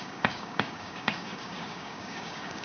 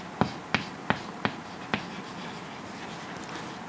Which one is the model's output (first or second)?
first